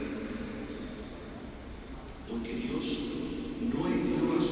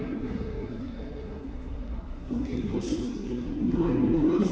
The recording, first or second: first